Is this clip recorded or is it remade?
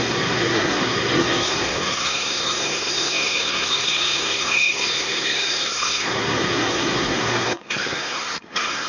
remade